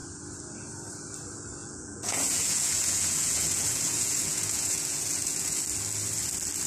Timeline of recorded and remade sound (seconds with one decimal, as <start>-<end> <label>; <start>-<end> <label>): 0.0-1.6 recorded; 1.6-5.6 remade; 5.6-6.7 recorded